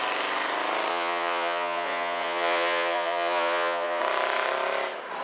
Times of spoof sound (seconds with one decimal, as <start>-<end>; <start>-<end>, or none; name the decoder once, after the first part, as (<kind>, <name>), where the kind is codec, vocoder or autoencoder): 0.9-4.0 (vocoder, Vocos)